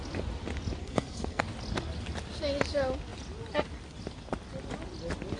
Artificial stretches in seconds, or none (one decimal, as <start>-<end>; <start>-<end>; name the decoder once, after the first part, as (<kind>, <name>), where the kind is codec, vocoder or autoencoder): 0.8-1.4 (codec, SNAC)